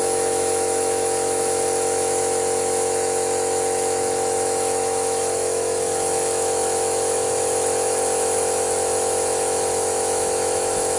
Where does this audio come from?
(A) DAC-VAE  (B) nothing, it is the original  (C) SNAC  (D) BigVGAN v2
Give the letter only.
A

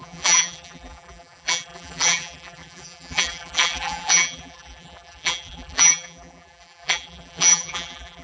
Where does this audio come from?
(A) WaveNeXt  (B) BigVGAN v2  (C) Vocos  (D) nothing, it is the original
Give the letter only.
B